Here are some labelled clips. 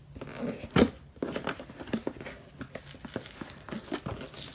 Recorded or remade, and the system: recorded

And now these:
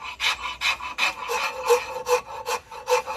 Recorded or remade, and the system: recorded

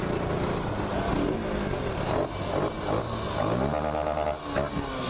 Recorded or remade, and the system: recorded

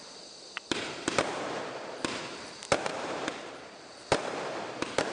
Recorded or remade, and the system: remade, vocoder, BigVGAN v2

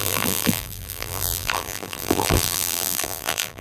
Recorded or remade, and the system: remade, vocoder, BigVGAN v2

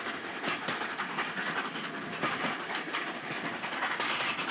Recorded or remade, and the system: recorded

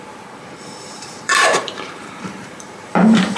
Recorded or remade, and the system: remade, vocoder, BigVGAN v2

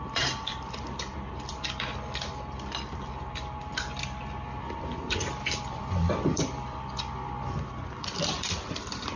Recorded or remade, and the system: remade, vocoder, BigVGAN v2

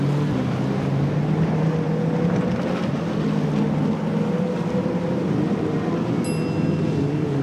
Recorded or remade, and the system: recorded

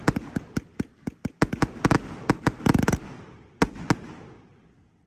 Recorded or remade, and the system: recorded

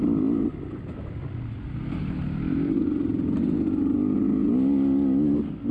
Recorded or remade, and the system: recorded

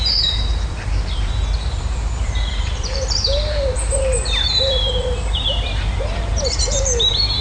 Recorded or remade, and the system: remade, vocoder, BigVGAN v2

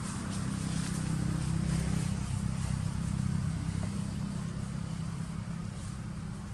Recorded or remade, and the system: recorded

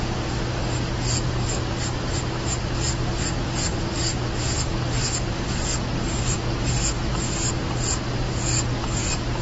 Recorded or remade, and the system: recorded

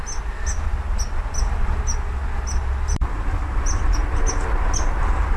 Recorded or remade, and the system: recorded